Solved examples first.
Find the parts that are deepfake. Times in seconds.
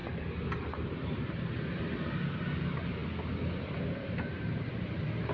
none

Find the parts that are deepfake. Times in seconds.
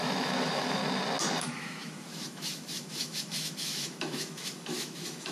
0.0-0.8 (autoencoder, DAC-VAE); 1.4-5.3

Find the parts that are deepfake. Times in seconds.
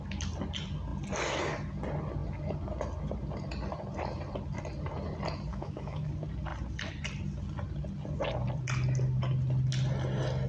5.5-6.1 (autoencoder, DAC-VAE)